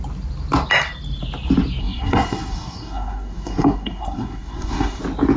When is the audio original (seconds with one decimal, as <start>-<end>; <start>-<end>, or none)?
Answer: 0.0-1.8; 5.0-5.4